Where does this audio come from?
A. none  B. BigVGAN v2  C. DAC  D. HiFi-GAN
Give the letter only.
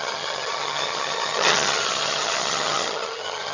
D